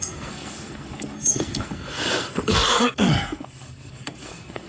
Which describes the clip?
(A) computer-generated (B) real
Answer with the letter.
A